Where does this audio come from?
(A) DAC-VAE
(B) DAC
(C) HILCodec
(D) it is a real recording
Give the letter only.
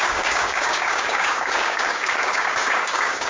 B